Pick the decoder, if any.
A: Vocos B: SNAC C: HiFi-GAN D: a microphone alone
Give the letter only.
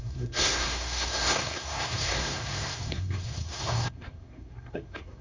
B